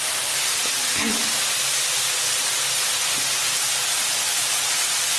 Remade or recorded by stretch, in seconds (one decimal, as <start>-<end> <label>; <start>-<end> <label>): 0.0-5.2 recorded